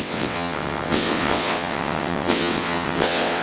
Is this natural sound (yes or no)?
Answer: no